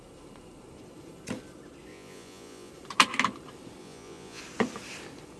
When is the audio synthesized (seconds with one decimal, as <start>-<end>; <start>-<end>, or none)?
1.9-2.7; 3.8-4.4